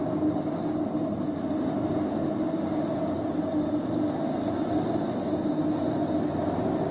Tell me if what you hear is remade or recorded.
recorded